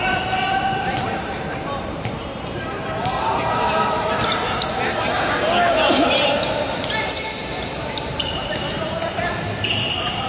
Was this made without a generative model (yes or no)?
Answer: no